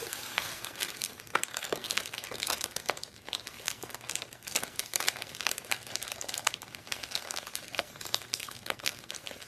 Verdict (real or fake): fake